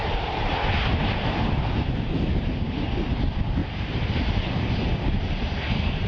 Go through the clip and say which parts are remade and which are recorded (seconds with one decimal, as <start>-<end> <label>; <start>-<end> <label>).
0.0-3.6 recorded; 3.6-4.7 remade; 4.7-6.1 recorded